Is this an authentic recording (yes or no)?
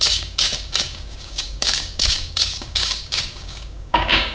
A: no